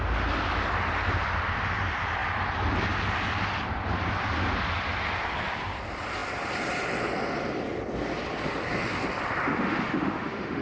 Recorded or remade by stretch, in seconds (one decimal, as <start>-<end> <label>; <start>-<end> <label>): 0.0-9.5 recorded; 9.5-10.6 remade